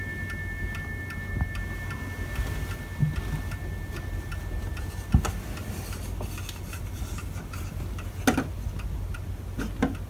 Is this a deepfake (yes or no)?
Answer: no